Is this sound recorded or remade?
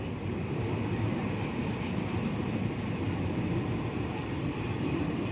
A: recorded